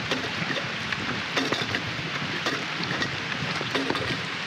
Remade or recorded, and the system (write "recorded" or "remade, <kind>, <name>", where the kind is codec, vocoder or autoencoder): remade, vocoder, BigVGAN v2